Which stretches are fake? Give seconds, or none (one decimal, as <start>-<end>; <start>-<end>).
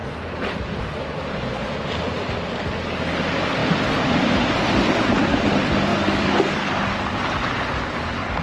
5.9-6.9